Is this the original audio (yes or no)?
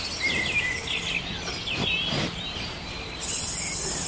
yes